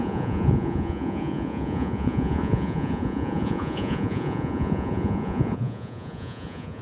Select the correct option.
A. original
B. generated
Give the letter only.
B